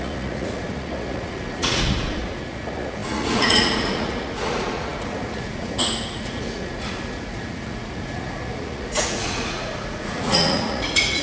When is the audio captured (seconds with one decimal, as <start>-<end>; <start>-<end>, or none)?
none